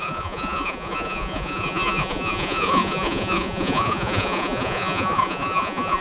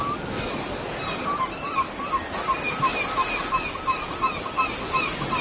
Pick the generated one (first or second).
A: first